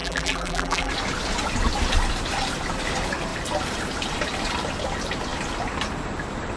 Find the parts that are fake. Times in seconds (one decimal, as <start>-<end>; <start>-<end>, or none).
0.0-0.9